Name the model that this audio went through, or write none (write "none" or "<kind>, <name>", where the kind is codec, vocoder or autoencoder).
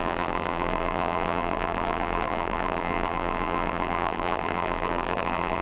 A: vocoder, BigVGAN v2